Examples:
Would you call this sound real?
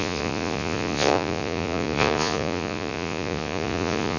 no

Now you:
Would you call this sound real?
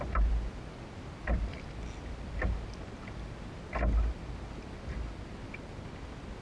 yes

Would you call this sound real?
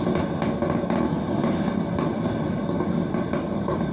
yes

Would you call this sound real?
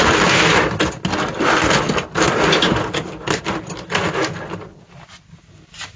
yes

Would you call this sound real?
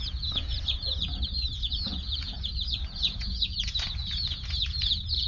no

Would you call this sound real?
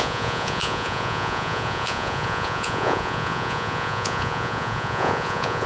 no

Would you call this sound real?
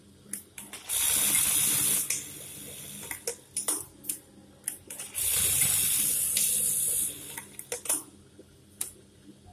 yes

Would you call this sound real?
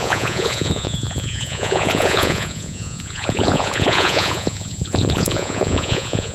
no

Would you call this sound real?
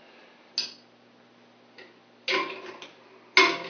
yes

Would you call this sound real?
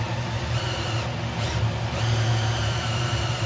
yes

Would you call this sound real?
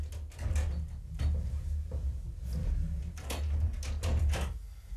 yes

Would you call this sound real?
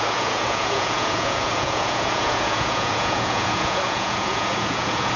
no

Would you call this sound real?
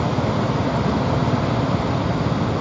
yes